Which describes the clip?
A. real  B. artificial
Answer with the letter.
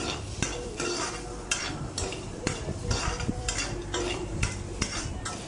B